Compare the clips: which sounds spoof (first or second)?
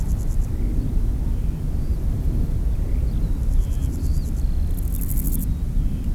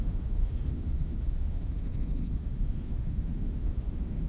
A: second